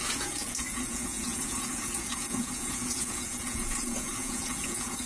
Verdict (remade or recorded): remade